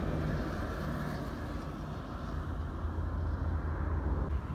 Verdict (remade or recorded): recorded